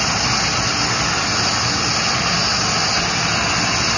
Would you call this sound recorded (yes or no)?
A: yes